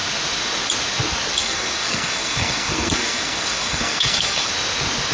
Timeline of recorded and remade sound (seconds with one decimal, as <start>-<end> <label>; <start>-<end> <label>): 0.0-1.4 recorded; 1.4-4.5 remade; 4.5-5.1 recorded